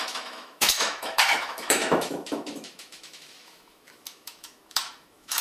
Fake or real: fake